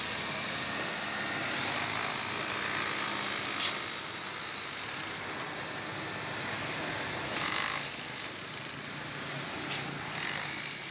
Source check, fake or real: real